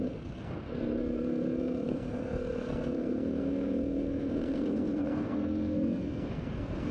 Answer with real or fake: fake